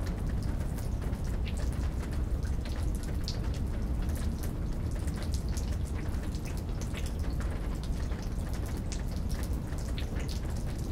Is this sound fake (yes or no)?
no